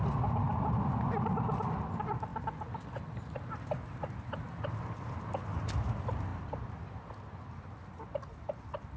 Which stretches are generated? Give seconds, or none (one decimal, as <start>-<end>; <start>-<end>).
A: none